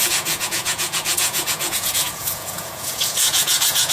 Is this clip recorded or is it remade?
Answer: remade